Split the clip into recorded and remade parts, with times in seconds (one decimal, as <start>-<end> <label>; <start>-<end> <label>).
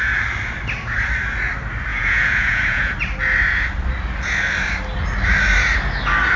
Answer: 0.0-1.9 recorded; 1.9-2.9 remade; 2.9-6.4 recorded